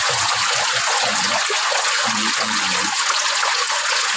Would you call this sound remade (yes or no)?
yes